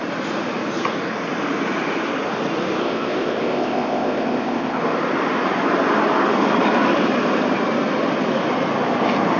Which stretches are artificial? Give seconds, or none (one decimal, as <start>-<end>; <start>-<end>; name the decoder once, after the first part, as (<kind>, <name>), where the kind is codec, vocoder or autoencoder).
2.8-4.8 (codec, ZipCodec)